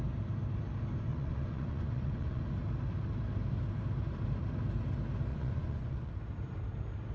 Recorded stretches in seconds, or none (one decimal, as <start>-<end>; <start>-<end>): 0.0-1.1; 2.4-5.3; 6.1-7.1